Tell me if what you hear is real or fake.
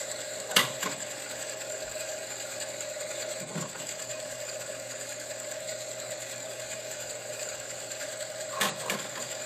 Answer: fake